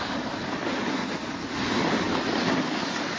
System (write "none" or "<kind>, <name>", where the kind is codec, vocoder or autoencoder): none